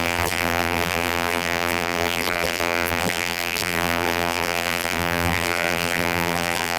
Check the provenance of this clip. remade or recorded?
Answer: remade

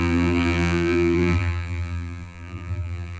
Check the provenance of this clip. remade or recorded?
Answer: remade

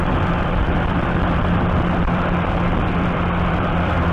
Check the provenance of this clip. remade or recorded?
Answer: remade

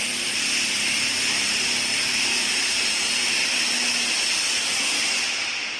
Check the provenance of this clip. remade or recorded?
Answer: recorded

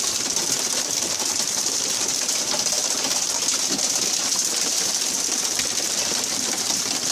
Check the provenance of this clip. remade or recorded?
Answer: recorded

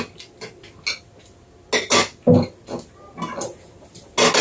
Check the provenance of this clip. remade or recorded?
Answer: recorded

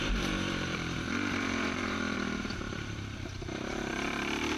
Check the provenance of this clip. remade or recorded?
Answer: remade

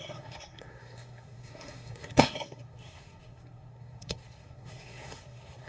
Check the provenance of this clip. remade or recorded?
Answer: remade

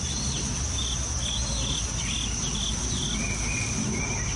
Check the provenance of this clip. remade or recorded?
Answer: recorded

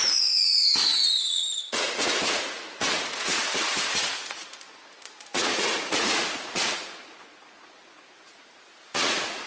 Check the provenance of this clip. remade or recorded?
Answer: remade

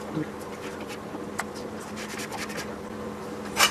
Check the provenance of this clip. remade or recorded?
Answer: remade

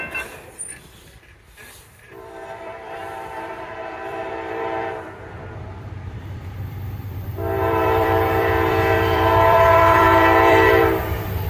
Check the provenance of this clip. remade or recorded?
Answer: remade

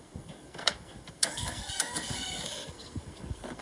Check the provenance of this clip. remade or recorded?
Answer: remade